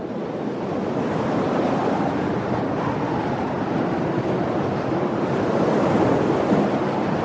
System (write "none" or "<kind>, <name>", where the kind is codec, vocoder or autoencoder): none